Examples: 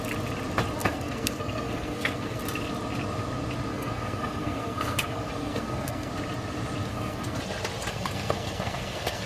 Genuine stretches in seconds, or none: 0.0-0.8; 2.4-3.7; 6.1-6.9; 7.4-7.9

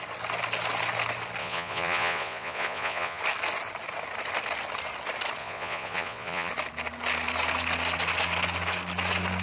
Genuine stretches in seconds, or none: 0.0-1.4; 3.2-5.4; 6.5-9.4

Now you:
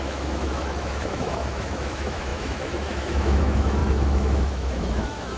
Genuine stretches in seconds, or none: none

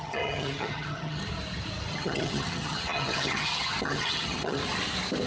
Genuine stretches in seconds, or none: 1.2-1.9; 4.6-5.3